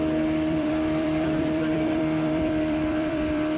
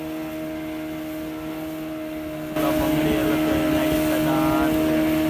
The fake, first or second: first